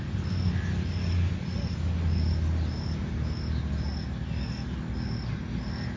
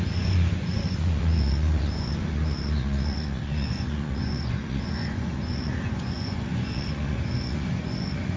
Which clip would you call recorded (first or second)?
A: first